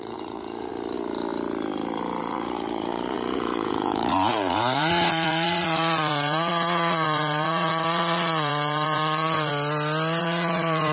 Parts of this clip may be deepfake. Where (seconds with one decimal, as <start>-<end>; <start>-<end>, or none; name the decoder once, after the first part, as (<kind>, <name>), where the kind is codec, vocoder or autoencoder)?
0.0-0.7 (vocoder, Vocos); 2.2-9.5; 10.2-10.9